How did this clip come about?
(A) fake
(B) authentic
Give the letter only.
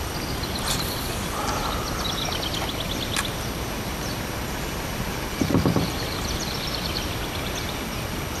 B